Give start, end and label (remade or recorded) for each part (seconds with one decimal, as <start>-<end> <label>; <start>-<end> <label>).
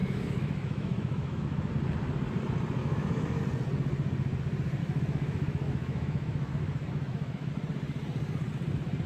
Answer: 0.0-1.7 remade; 1.7-2.8 recorded; 2.8-3.4 remade; 3.4-4.8 recorded; 4.8-7.5 remade; 7.5-9.1 recorded